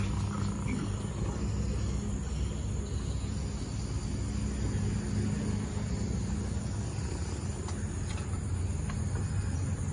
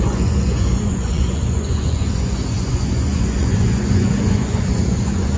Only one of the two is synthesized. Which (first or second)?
second